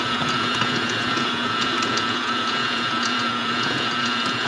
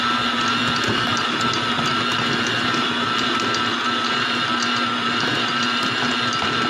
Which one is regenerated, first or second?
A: first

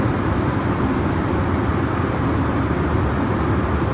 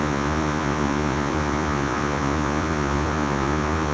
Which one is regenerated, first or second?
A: second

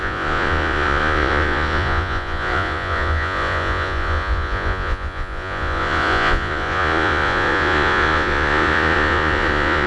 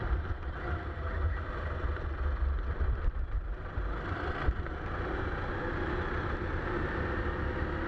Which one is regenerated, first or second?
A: first